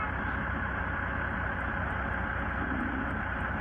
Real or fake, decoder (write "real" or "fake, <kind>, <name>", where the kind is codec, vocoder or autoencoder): real